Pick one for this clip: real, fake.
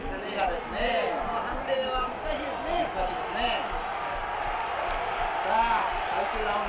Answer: real